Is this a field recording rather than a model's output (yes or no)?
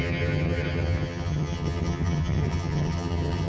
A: no